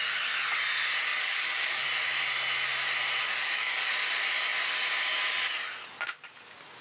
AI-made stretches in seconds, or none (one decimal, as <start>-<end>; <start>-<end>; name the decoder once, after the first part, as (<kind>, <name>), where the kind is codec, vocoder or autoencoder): 1.1-1.9 (codec, DAC); 3.2-3.9